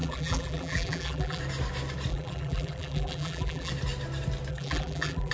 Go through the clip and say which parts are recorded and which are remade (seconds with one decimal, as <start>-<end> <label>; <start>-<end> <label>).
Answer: 0.0-1.4 remade; 1.4-2.1 recorded; 2.1-3.7 remade; 3.7-4.5 recorded; 4.5-5.3 remade